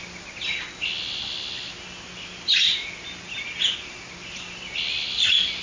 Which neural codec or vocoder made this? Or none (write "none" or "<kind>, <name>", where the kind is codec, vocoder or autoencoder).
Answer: none